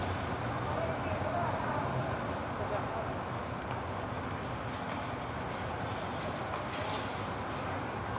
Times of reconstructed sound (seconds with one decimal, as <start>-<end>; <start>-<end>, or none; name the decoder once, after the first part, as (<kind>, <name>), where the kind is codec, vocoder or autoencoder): 0.0-3.4 (vocoder, BigVGAN v2)